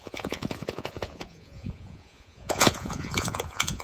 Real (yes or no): no